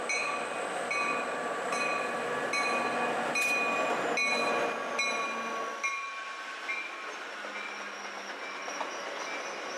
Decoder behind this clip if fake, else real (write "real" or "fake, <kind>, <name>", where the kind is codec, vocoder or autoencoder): real